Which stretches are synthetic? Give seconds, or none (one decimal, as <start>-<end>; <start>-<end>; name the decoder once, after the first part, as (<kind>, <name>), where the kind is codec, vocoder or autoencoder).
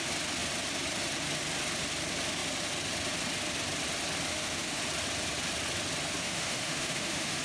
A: 4.3-4.8 (autoencoder, DAC-VAE); 6.2-7.4